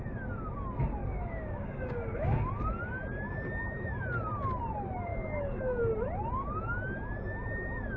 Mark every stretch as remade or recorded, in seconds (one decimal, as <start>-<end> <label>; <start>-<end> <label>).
0.0-1.0 recorded; 1.0-2.5 remade; 2.5-5.1 recorded; 5.1-5.8 remade; 5.8-8.0 recorded